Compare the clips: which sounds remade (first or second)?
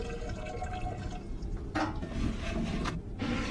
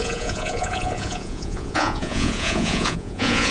second